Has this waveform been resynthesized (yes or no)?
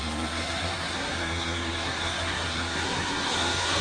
yes